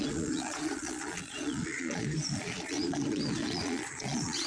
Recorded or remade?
remade